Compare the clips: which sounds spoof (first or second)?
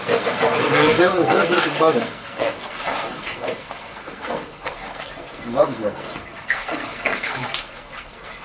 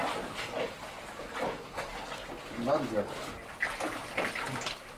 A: first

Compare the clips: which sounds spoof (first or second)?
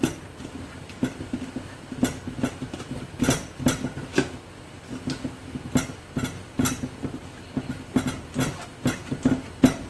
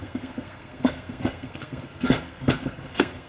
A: second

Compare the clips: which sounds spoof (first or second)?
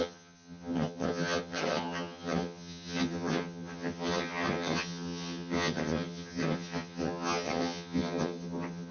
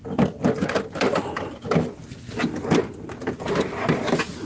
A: first